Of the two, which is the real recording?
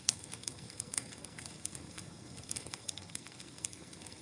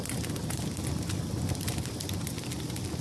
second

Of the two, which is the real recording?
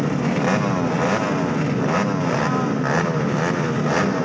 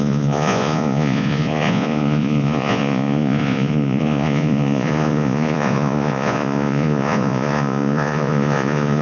first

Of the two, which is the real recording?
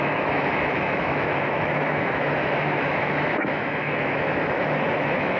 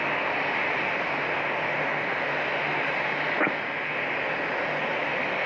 second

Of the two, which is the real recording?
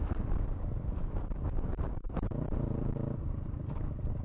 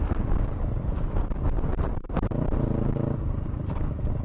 second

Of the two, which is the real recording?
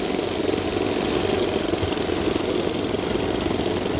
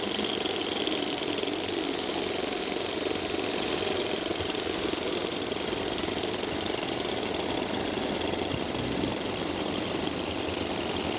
first